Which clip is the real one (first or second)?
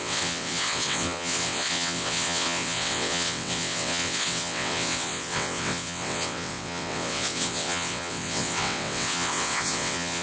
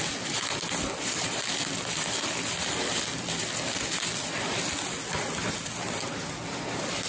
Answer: second